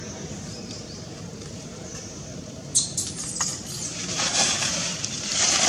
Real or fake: fake